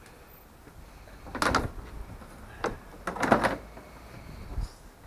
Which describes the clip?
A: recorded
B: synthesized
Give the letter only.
A